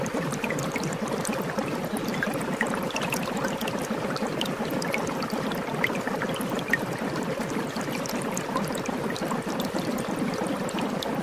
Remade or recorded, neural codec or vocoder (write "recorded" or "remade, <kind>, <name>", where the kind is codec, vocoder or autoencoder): recorded